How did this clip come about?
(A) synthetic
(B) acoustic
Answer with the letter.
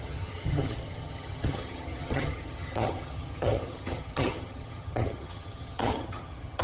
A